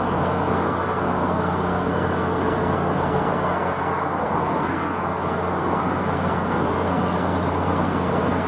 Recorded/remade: remade